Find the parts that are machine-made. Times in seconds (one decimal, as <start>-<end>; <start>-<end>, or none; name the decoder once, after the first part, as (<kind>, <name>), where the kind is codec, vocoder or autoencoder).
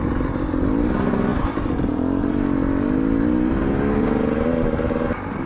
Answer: none